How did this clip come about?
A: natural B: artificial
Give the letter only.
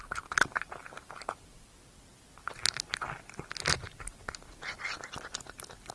A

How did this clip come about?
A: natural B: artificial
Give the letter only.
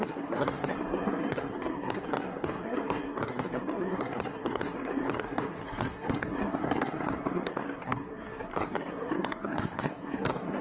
B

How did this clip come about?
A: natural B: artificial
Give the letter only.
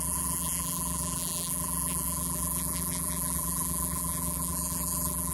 B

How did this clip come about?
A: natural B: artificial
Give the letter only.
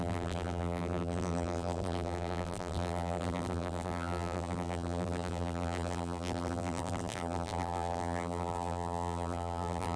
B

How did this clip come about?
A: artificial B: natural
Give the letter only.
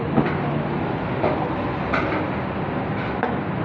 B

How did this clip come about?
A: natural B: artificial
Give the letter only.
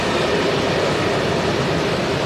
A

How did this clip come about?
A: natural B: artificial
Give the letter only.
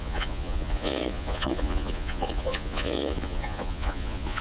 B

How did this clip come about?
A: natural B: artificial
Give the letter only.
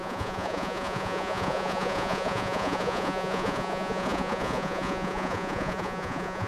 B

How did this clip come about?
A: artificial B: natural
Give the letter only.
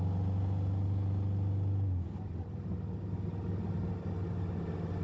B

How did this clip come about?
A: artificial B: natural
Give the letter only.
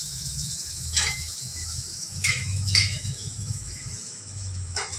A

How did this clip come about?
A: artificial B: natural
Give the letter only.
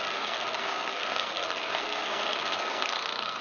A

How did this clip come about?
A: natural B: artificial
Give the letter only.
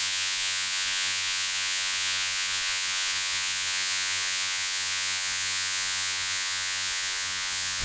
B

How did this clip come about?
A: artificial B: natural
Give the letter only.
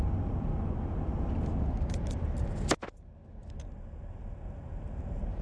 B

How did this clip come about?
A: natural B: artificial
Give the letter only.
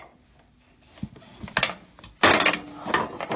A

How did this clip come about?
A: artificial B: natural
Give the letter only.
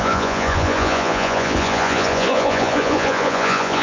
A